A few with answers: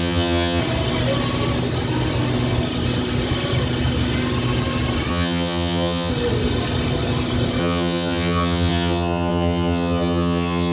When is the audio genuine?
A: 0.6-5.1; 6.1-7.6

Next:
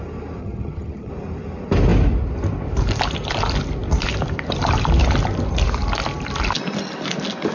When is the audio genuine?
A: 0.0-0.4; 1.1-7.5

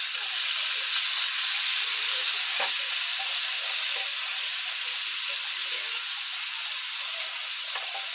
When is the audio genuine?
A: 0.0-8.1

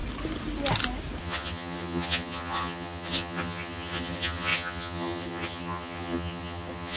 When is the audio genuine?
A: 0.0-1.2

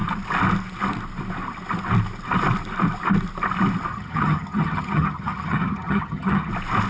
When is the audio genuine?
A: 0.0-3.9; 6.5-6.9

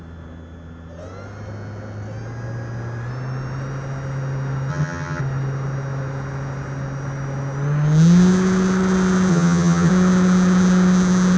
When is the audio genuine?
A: 0.0-4.7; 5.2-9.3; 9.9-11.4